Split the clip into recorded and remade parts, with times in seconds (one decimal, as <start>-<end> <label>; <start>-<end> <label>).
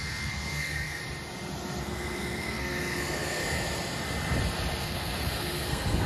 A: 0.0-1.0 remade; 1.0-1.8 recorded; 1.8-3.4 remade; 3.4-4.8 recorded; 4.8-6.1 remade